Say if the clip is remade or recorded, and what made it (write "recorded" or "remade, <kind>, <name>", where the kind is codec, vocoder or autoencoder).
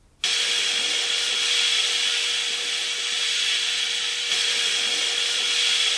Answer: recorded